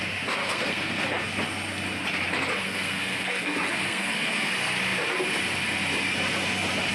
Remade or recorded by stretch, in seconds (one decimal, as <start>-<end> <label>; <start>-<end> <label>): 0.0-0.4 recorded; 0.4-1.2 remade; 1.2-2.6 recorded; 2.6-4.5 remade; 4.5-6.9 recorded